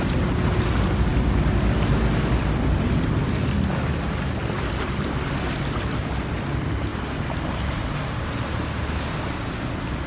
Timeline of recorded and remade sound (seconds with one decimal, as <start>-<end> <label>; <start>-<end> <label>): 0.0-10.1 recorded